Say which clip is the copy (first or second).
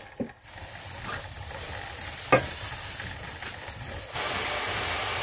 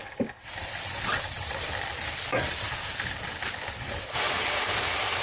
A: second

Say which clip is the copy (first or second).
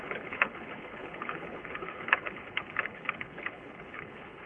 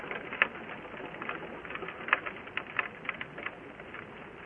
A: first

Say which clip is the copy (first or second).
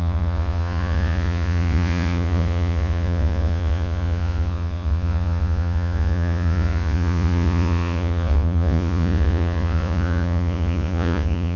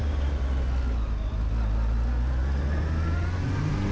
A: first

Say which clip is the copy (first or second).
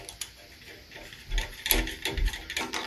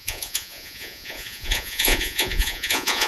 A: second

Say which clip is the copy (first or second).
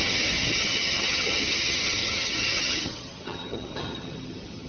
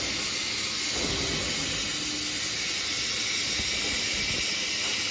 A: first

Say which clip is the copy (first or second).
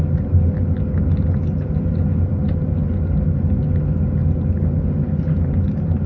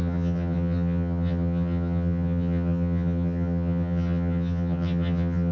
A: second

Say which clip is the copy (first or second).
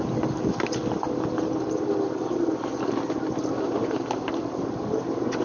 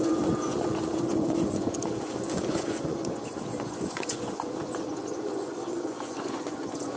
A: second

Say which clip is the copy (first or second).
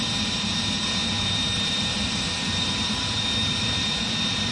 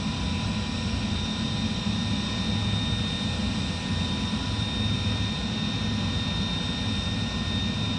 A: first